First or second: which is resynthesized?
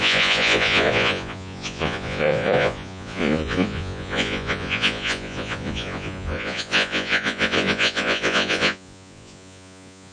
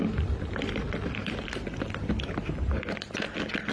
first